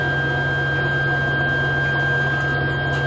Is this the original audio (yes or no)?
yes